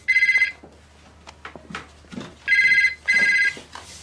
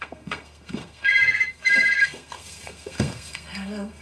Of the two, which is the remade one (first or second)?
second